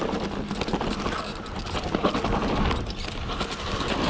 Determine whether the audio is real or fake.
real